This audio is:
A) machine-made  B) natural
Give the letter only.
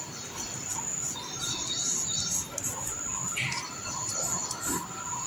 B